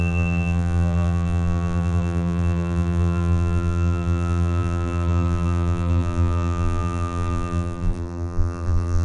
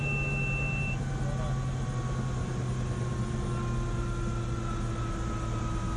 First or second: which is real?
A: second